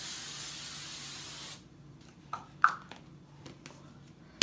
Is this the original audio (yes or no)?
yes